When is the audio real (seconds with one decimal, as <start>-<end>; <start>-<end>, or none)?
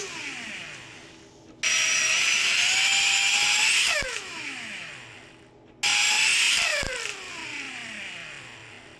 0.0-3.8; 4.9-9.0